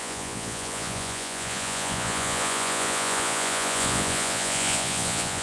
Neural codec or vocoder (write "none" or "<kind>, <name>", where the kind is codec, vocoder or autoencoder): vocoder, Vocos